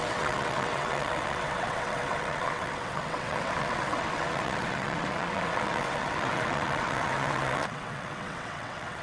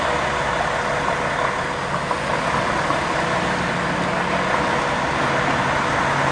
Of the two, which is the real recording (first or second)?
second